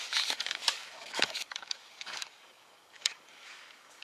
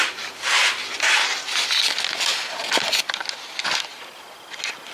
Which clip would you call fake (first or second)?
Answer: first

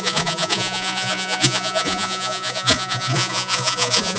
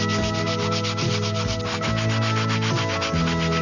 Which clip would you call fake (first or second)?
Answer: first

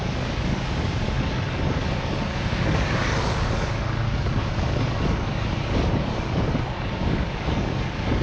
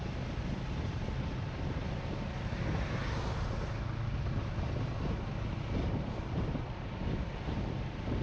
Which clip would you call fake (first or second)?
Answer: first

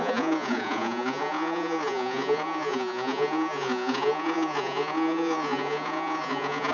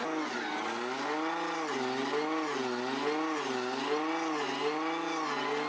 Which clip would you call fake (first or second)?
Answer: first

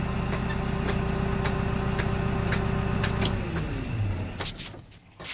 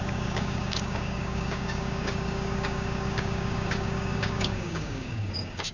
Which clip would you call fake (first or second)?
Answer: second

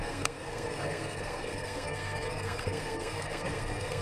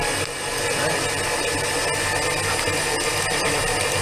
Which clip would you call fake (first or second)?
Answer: first